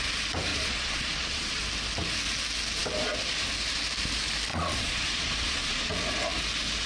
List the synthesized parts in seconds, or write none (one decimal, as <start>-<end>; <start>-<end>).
0.5-1.6; 4.5-5.9